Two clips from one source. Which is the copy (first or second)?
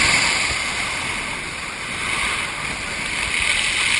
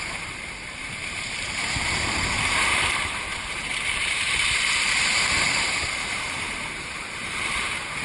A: second